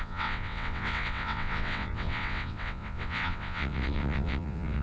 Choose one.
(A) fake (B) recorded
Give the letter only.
A